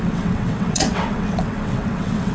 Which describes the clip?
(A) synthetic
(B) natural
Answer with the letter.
A